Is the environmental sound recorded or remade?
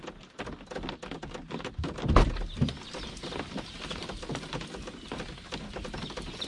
recorded